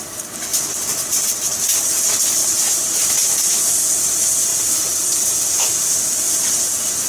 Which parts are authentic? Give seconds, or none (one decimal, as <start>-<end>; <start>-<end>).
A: 0.0-0.5; 1.3-2.4; 3.7-4.5; 5.4-7.1